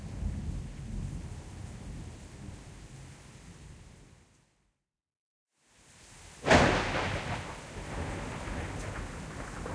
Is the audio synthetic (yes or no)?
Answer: no